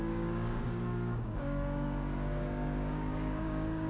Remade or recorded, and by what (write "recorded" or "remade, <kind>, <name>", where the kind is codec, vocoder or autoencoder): remade, codec, DAC